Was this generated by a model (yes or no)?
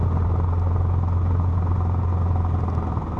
no